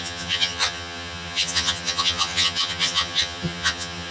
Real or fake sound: fake